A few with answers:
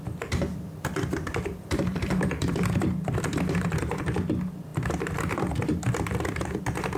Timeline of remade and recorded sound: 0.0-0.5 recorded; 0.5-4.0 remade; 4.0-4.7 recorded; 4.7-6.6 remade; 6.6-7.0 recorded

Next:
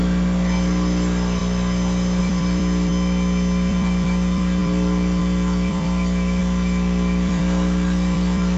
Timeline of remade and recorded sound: 0.0-1.4 remade; 1.4-2.2 recorded; 2.2-2.9 remade; 2.9-3.7 recorded; 3.7-8.6 remade